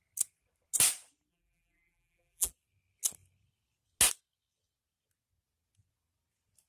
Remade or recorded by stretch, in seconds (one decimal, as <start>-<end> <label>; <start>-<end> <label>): 0.0-1.3 recorded; 1.3-2.5 remade; 2.5-6.7 recorded